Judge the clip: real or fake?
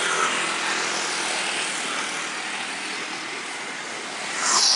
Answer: real